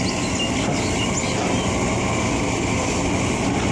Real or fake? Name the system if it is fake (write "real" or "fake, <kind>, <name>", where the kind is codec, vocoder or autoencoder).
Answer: real